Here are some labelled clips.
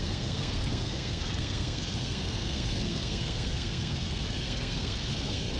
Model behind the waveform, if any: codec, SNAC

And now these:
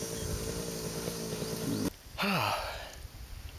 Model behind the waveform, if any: none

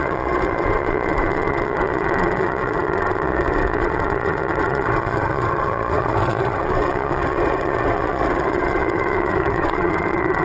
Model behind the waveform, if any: vocoder, WaveNeXt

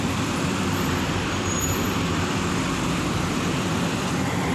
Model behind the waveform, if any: vocoder, BigVGAN v2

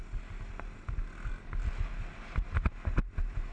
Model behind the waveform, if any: none